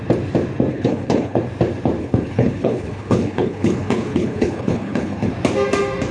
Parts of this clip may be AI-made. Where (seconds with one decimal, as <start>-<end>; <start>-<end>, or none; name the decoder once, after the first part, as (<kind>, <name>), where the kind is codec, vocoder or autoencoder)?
0.7-1.4 (codec, HILCodec); 2.0-5.3